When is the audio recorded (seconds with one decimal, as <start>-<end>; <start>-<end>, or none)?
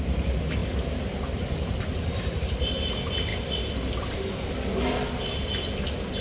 0.0-0.6; 2.4-6.2